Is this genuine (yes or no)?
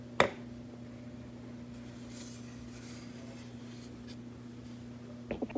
yes